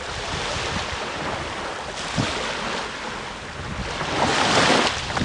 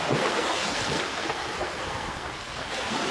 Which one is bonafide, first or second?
first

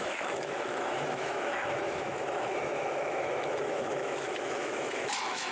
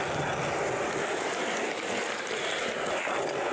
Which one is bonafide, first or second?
second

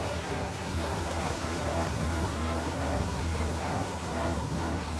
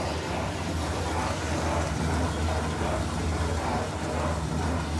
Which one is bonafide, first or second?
second